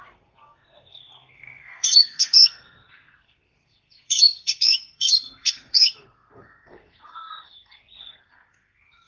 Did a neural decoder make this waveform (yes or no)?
yes